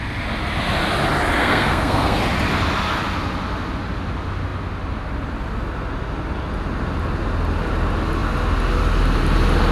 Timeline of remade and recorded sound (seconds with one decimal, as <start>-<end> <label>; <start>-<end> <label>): 0.0-1.4 recorded; 1.4-2.2 remade; 2.2-9.7 recorded